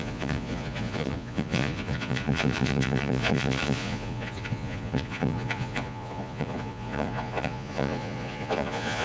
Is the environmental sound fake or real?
fake